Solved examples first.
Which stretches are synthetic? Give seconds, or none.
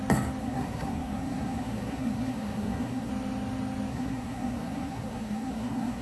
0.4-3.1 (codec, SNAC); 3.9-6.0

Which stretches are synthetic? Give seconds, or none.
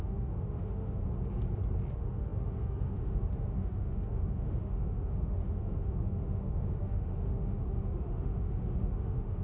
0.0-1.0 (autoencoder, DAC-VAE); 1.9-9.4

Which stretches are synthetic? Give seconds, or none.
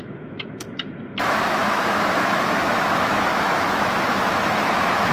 0.0-5.1 (autoencoder, DAC-VAE)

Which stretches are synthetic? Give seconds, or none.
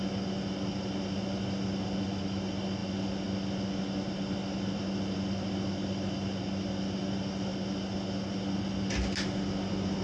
none